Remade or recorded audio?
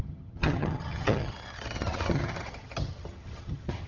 remade